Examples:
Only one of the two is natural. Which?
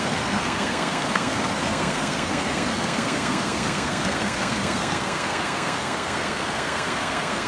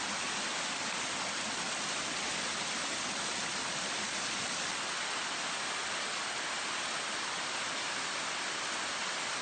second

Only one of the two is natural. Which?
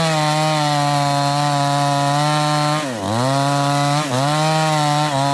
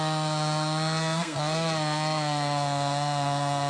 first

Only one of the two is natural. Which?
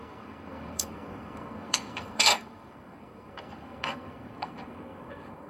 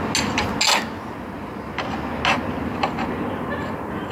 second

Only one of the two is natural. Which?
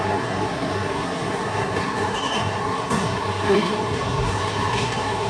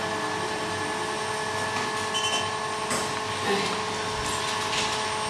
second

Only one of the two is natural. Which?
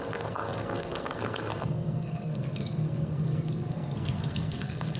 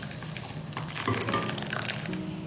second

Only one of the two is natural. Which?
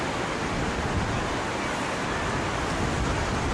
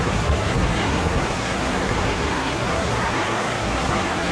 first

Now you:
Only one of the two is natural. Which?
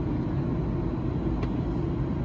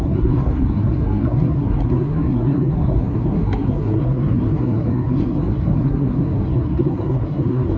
first